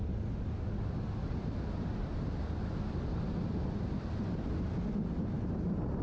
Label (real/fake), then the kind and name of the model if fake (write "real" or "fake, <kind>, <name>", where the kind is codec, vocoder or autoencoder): real